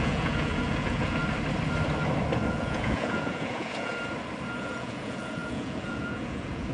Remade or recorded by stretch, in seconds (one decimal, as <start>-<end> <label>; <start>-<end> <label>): 0.0-1.2 remade; 1.2-2.5 recorded; 2.5-3.9 remade; 3.9-4.6 recorded; 4.6-6.7 remade